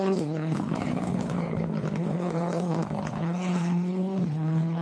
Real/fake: fake